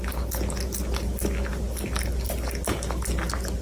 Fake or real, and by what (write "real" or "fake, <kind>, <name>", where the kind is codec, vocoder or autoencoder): real